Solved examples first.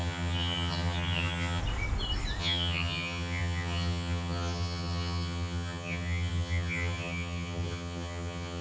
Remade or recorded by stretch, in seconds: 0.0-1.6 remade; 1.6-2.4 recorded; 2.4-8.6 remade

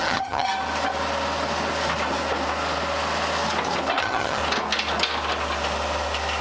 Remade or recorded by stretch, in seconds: 0.0-0.5 remade; 0.5-4.0 recorded; 4.0-4.4 remade; 4.4-6.4 recorded

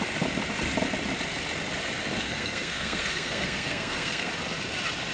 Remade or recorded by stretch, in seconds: 0.0-2.2 recorded; 2.2-4.3 remade; 4.3-5.1 recorded

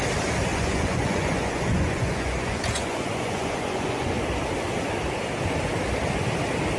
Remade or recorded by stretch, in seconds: 0.0-0.5 recorded; 0.5-4.2 remade; 4.2-6.8 recorded

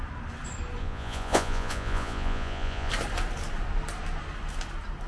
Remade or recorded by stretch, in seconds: 0.0-0.8 recorded; 0.8-2.9 remade; 2.9-5.1 recorded

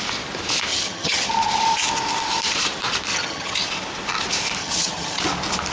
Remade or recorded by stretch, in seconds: 0.0-0.7 recorded; 0.7-1.3 remade; 1.3-3.1 recorded; 3.1-3.7 remade; 3.7-4.6 recorded; 4.6-5.2 remade; 5.2-5.7 recorded

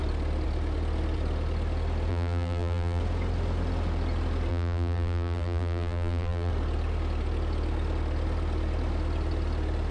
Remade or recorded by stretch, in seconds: 0.0-2.1 recorded; 2.1-3.0 remade; 3.0-4.5 recorded; 4.5-6.5 remade; 6.5-9.9 recorded